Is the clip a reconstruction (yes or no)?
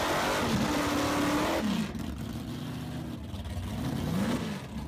no